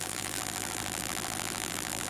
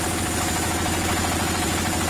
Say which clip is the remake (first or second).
first